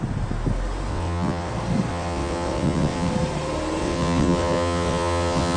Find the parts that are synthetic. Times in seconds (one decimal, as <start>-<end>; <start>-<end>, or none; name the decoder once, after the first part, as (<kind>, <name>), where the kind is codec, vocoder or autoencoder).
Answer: 0.9-1.5 (vocoder, WaveNeXt); 1.9-3.1; 3.8-5.6